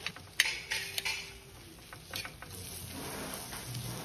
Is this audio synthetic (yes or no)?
no